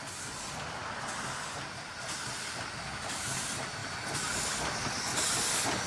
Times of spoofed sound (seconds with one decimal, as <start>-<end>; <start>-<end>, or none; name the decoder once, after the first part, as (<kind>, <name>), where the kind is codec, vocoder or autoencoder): none